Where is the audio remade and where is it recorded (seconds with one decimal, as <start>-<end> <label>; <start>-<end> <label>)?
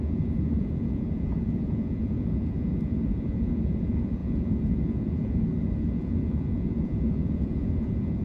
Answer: 0.0-8.2 remade